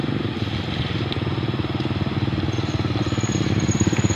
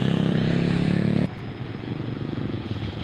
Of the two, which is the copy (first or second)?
second